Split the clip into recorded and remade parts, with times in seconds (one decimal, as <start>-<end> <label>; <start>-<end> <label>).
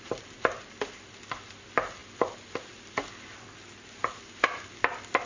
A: 0.0-5.3 recorded